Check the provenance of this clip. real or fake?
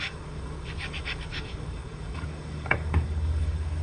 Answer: fake